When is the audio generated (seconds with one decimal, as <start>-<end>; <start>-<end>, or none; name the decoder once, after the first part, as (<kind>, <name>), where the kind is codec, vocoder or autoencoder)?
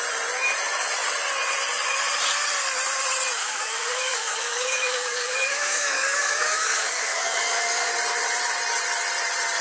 3.4-7.9 (codec, DAC)